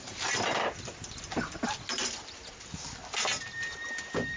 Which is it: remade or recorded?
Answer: recorded